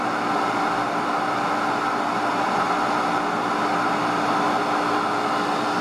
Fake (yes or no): no